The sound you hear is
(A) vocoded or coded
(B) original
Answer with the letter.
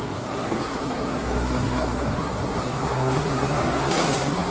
A